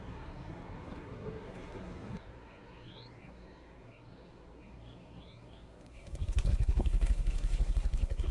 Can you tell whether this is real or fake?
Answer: fake